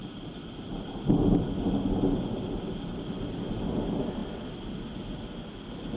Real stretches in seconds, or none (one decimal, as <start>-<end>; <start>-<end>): 0.0-6.0